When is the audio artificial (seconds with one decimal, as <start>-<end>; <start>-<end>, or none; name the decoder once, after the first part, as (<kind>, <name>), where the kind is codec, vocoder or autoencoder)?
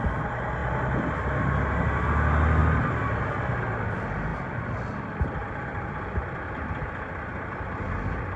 none